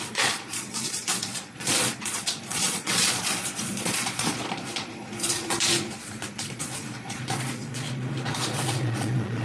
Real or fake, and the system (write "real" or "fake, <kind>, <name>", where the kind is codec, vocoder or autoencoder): fake, vocoder, Vocos